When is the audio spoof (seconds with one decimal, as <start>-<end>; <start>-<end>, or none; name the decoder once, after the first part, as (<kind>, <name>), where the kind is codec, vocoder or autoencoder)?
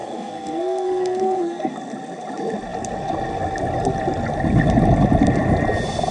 0.0-1.7 (codec, SNAC)